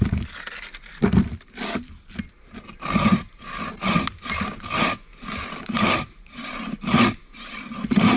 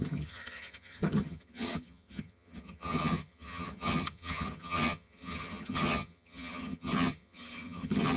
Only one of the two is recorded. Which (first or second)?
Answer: first